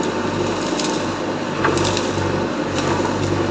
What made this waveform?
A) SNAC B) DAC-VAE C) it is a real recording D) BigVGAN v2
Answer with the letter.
C